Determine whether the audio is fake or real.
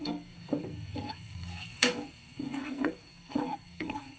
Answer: fake